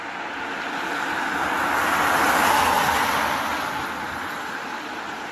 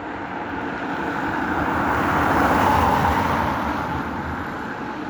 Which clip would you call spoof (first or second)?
second